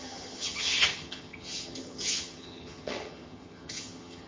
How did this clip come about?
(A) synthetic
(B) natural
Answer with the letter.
A